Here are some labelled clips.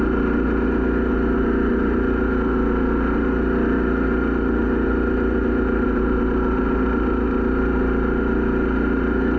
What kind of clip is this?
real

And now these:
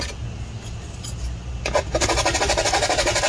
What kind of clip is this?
real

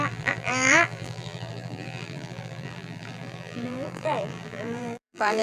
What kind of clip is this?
fake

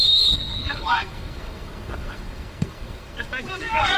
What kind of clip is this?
fake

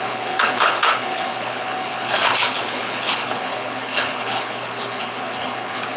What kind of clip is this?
fake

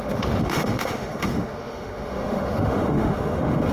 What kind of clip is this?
fake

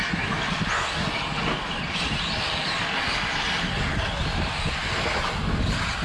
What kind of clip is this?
real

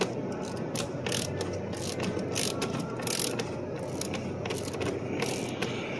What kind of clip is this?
real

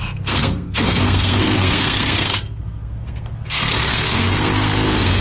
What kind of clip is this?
fake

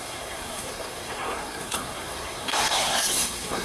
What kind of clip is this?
fake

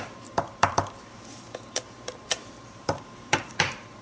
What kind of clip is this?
fake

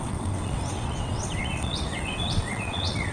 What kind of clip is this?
fake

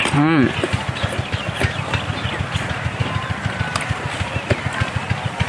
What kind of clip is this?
real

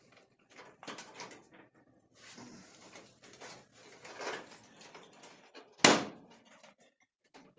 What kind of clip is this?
real